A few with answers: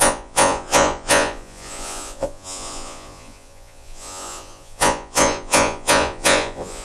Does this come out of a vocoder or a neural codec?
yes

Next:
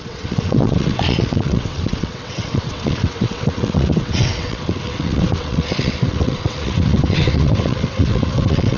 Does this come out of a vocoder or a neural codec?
yes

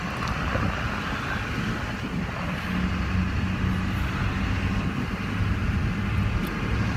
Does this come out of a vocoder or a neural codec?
no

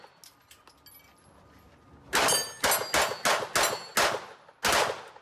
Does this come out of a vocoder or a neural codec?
no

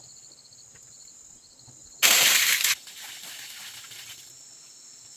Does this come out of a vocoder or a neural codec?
no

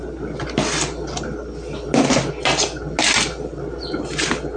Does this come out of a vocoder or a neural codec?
no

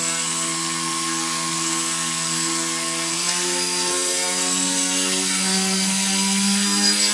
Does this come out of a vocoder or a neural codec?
yes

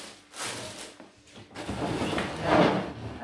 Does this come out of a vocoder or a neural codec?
no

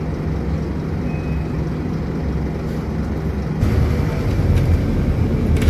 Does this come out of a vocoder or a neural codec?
no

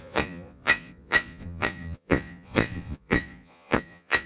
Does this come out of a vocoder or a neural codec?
yes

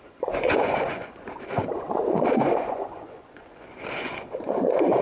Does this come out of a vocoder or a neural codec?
yes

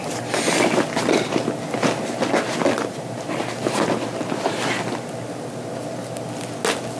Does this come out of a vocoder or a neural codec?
no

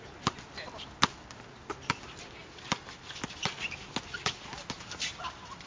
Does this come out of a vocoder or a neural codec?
no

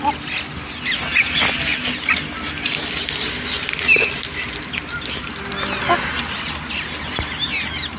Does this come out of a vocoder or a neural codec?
no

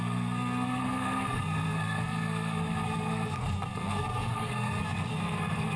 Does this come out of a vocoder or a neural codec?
yes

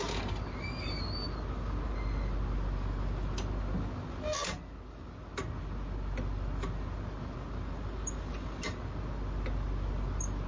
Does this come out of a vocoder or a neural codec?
no